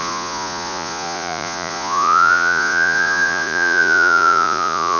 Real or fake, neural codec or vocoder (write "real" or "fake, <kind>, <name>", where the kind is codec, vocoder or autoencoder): fake, vocoder, Vocos